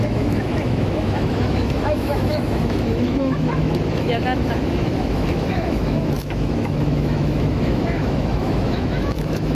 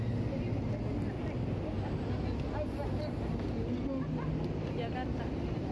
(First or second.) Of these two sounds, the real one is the second